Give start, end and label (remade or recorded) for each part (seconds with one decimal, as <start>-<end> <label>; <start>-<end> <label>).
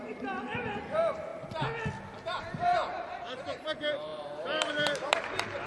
0.0-1.3 remade; 1.3-2.4 recorded; 2.4-5.7 remade